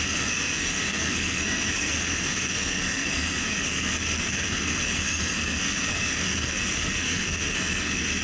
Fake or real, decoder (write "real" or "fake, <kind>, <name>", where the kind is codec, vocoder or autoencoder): fake, codec, SNAC